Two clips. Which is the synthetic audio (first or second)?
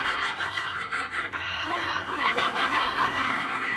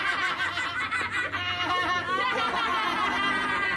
first